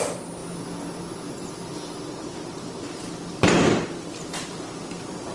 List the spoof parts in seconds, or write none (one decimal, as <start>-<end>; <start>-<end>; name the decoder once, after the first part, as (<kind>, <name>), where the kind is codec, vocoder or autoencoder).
0.0-0.4 (vocoder, BigVGAN v2); 3.4-5.3